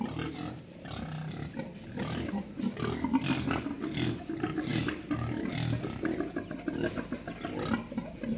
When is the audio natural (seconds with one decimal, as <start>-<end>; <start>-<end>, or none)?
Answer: 0.0-8.4